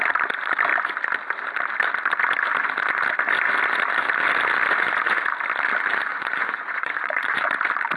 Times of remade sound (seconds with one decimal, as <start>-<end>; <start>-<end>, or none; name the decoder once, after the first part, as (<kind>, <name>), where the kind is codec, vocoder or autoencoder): 6.1-7.5 (vocoder, Vocos)